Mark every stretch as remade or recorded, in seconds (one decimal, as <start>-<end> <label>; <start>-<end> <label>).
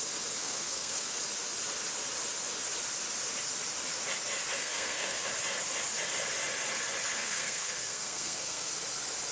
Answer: 0.0-0.4 recorded; 0.4-1.2 remade; 1.2-4.6 recorded; 4.6-5.3 remade; 5.3-7.2 recorded; 7.2-8.7 remade; 8.7-9.3 recorded